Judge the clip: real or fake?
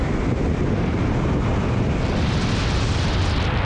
real